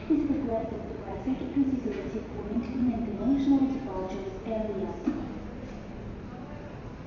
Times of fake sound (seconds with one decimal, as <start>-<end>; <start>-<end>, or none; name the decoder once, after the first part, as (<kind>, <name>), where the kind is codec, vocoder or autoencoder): 0.5-2.9 (vocoder, Vocos)